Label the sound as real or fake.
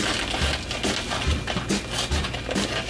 real